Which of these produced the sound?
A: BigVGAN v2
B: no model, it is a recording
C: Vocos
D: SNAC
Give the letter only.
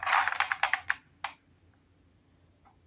B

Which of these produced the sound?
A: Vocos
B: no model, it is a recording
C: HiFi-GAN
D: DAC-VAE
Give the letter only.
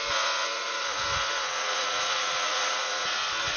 A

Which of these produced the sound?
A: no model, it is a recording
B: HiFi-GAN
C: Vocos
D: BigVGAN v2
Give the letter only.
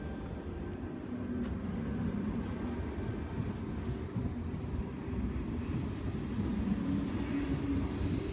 A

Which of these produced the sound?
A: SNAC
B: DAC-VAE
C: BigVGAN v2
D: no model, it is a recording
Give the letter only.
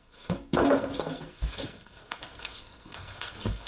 A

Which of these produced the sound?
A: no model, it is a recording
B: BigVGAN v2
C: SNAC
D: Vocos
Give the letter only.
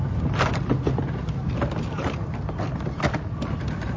A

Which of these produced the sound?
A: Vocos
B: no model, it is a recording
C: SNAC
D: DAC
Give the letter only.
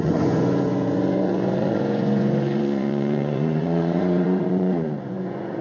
A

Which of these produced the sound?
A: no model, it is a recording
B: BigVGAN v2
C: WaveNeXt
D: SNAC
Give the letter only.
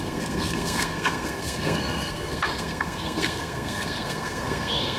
D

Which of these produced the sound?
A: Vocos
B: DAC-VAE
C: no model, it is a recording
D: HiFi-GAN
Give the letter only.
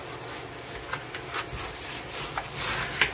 C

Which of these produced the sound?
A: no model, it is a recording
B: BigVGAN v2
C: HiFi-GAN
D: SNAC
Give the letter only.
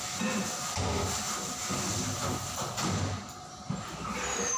A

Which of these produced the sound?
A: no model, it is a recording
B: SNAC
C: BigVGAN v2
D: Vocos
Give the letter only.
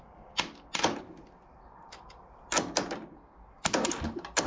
A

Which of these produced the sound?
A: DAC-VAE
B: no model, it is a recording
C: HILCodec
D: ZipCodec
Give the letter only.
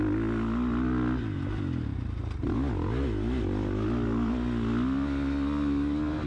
B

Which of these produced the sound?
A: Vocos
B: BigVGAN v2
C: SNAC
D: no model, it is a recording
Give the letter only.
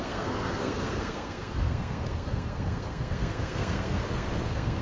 C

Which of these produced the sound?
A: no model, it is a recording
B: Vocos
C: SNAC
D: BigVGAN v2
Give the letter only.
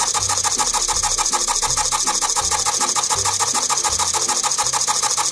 A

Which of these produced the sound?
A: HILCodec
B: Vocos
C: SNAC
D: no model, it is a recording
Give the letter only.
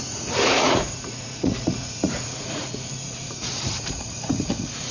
B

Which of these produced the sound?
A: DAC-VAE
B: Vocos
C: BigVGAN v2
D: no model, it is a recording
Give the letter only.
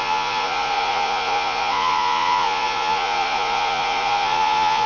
B